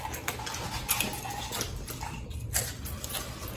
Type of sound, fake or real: real